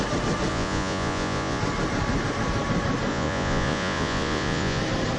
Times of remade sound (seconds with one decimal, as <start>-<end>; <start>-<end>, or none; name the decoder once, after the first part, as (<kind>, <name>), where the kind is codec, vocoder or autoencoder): 0.5-1.6 (vocoder, Vocos); 3.1-4.8